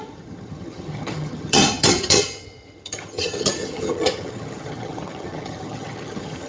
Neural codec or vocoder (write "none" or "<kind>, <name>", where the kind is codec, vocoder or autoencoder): vocoder, HiFi-GAN